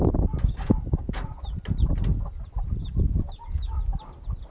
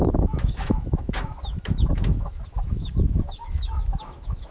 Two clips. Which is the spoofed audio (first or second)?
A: second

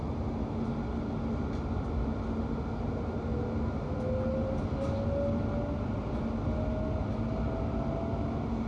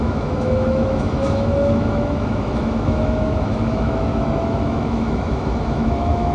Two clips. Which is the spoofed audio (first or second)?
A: second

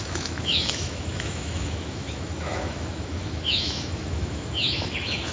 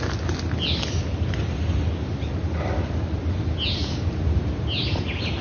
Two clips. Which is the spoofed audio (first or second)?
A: first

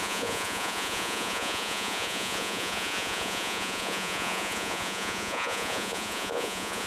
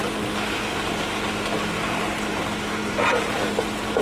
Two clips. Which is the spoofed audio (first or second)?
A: first